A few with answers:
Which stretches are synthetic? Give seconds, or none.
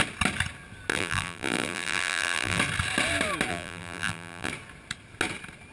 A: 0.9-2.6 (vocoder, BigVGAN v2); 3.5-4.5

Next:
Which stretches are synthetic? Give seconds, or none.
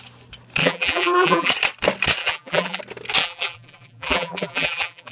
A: 0.6-1.5 (vocoder, BigVGAN v2); 2.2-2.8; 3.2-5.1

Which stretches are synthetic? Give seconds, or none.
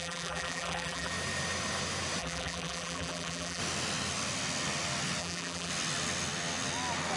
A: 0.0-1.1 (vocoder, BigVGAN v2); 2.2-3.6; 5.2-5.7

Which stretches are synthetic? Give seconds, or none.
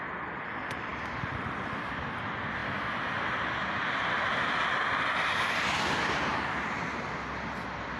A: 6.3-7.1 (vocoder, BigVGAN v2)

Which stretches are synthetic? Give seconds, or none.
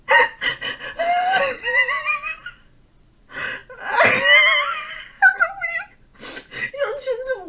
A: 0.0-3.6 (vocoder, BigVGAN v2); 5.0-6.1; 6.7-7.5